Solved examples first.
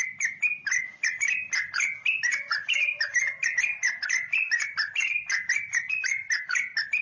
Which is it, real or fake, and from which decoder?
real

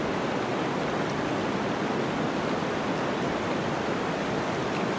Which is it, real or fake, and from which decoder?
real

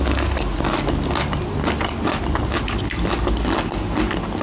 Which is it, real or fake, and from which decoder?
real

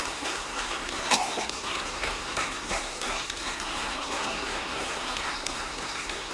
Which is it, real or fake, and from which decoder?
fake, codec, SNAC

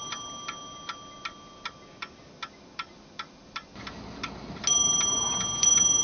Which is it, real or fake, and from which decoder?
real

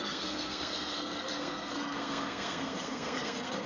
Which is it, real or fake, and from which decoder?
fake, codec, SNAC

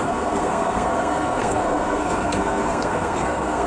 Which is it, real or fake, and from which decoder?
fake, codec, SNAC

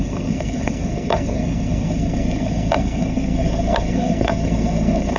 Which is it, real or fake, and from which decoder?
fake, codec, SNAC